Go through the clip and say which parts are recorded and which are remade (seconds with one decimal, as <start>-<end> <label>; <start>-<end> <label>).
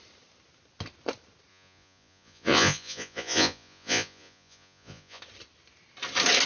0.0-1.5 recorded; 1.5-5.2 remade; 5.2-6.5 recorded